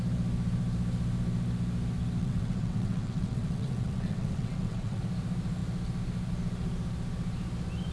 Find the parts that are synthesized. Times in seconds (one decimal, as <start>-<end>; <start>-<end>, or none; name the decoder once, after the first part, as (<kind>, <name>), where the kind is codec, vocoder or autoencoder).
2.2-5.0 (vocoder, WaveNeXt)